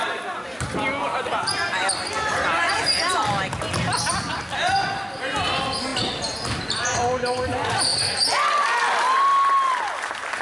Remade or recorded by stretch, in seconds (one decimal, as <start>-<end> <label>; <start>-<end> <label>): 0.0-10.4 recorded